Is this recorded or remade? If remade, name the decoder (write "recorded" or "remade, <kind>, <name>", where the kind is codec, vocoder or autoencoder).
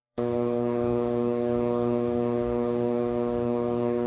remade, codec, DAC